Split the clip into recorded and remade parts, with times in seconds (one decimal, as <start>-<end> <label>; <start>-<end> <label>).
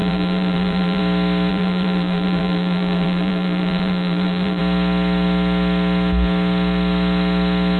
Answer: 0.0-1.0 remade; 1.0-1.5 recorded; 1.5-4.6 remade; 4.6-7.8 recorded